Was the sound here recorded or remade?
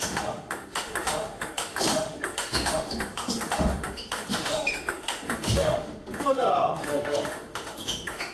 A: remade